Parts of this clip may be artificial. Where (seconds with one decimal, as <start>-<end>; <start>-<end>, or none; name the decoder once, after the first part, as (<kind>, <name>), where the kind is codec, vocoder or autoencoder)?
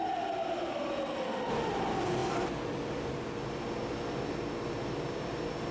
none